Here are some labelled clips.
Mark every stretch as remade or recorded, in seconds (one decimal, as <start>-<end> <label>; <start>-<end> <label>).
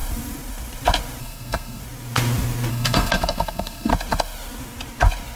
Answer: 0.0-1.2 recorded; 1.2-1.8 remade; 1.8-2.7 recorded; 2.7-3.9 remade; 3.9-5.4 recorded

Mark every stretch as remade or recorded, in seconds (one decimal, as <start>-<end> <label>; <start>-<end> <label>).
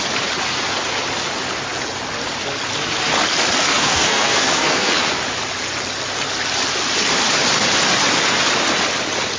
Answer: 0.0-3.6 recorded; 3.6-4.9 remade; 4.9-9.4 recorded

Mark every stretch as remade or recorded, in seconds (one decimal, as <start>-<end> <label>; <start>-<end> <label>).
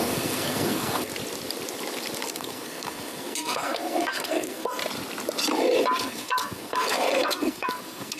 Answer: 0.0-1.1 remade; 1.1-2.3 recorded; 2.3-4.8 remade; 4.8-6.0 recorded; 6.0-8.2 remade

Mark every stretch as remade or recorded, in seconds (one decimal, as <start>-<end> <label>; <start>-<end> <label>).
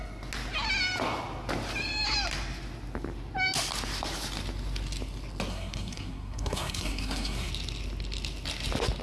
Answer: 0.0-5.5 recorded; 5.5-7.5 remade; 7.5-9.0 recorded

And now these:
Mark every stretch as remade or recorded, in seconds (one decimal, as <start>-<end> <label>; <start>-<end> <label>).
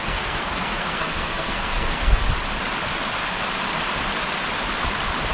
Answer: 0.0-2.2 remade; 2.2-5.3 recorded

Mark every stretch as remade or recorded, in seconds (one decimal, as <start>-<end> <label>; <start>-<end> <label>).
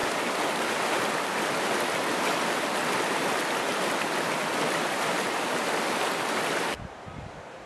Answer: 0.0-7.7 recorded